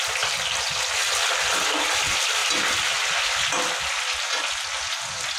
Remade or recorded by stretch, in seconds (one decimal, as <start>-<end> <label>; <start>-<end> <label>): 0.0-5.4 recorded